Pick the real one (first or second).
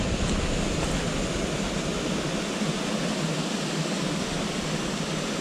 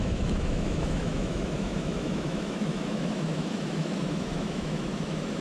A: first